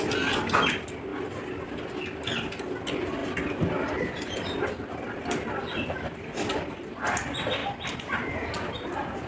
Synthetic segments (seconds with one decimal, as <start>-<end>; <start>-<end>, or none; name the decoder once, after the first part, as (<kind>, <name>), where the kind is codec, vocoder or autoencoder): none